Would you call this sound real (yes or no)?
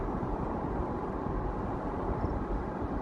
yes